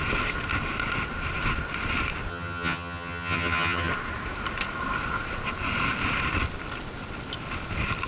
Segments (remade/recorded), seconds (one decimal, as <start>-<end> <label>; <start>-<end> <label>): 0.0-2.3 recorded; 2.3-3.9 remade; 3.9-8.1 recorded

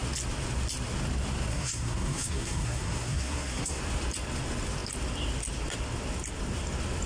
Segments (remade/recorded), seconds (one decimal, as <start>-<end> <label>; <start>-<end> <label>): 0.0-1.5 recorded; 1.5-3.8 remade; 3.8-7.1 recorded

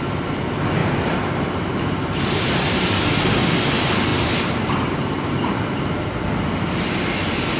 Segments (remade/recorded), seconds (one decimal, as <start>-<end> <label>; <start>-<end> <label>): 0.0-0.8 recorded; 0.8-3.0 remade; 3.0-4.1 recorded; 4.1-6.0 remade; 6.0-7.6 recorded

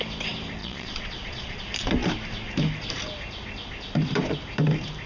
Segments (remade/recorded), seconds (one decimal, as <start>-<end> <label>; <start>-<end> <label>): 0.0-0.6 recorded; 0.6-1.6 remade; 1.6-5.1 recorded

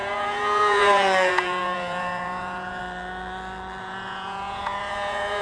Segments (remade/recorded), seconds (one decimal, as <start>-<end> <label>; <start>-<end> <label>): 0.0-2.8 remade; 2.8-3.8 recorded; 3.8-5.4 remade

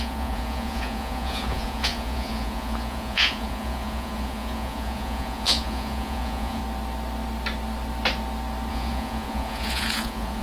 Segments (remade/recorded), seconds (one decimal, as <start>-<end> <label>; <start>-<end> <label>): 0.0-6.6 remade; 6.6-8.7 recorded; 8.7-10.4 remade